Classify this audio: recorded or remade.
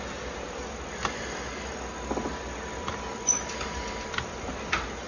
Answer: recorded